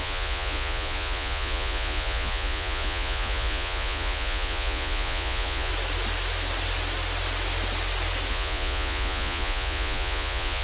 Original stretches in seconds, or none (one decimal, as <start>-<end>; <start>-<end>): 5.7-8.3